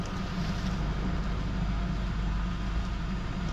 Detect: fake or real real